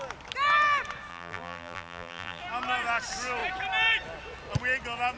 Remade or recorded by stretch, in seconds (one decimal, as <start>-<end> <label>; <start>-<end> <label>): 0.0-1.1 recorded; 1.1-2.4 remade; 2.4-5.2 recorded